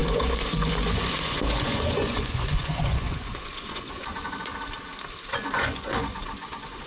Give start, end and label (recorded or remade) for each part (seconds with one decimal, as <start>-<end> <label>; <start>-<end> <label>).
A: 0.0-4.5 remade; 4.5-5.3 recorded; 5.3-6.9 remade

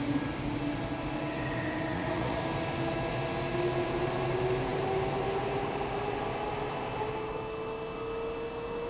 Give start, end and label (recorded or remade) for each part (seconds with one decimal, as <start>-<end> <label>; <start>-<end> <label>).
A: 0.0-1.9 recorded; 1.9-2.4 remade; 2.4-8.9 recorded

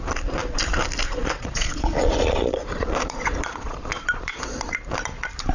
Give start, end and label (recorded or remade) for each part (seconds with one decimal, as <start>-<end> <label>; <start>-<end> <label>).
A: 0.0-1.1 recorded; 1.1-4.4 remade; 4.4-5.5 recorded

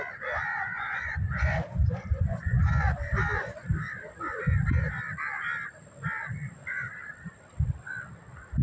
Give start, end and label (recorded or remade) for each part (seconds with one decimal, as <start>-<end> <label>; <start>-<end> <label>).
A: 0.0-0.5 recorded; 0.5-1.5 remade; 1.5-2.1 recorded; 2.1-2.7 remade; 2.7-8.6 recorded

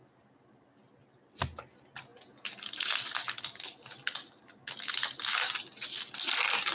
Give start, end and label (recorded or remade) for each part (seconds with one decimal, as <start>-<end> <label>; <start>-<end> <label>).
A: 0.0-6.7 recorded

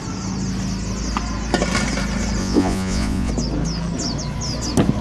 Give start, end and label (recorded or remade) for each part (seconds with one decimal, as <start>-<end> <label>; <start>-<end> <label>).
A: 0.0-2.4 recorded; 2.4-3.3 remade; 3.3-5.0 recorded

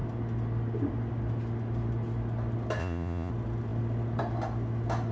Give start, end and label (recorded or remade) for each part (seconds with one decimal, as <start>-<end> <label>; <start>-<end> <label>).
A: 0.0-2.8 recorded; 2.8-3.3 remade; 3.3-5.1 recorded